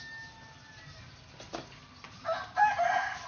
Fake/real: real